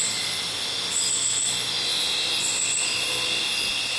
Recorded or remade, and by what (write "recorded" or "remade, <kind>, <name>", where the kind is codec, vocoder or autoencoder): recorded